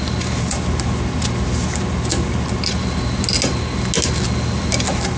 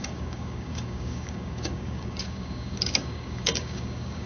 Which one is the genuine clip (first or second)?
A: first